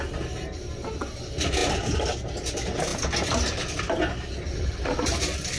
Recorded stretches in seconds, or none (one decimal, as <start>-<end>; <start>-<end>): 0.0-5.6